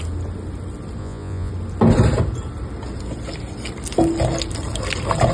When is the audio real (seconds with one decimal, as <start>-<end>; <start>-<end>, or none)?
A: 0.0-1.0; 1.5-5.3

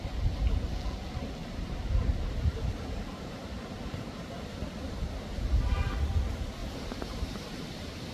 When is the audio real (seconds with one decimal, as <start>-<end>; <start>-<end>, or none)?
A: 0.0-1.4; 4.3-6.6; 7.6-8.1